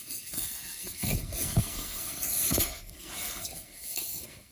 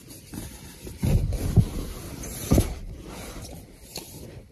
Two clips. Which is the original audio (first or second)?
second